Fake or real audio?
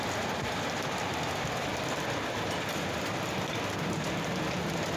real